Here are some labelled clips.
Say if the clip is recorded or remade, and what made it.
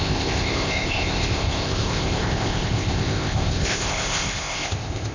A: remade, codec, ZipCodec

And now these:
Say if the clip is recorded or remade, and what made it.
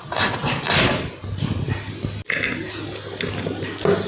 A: recorded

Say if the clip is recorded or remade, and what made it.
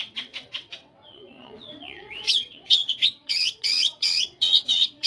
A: remade, vocoder, WaveNeXt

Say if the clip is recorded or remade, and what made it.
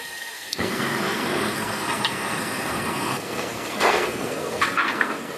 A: remade, codec, SNAC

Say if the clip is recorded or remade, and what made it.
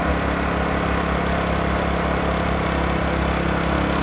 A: recorded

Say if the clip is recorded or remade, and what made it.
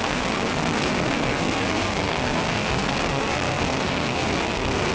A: remade, codec, SNAC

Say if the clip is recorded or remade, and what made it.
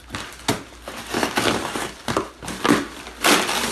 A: recorded